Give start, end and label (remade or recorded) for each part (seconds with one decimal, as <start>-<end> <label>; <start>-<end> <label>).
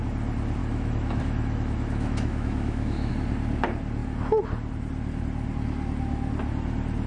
0.0-0.6 recorded; 0.6-3.1 remade; 3.1-7.1 recorded